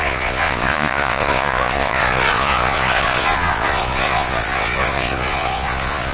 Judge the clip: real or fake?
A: fake